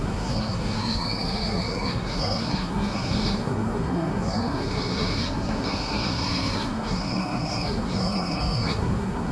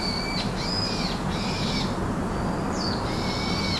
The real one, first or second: second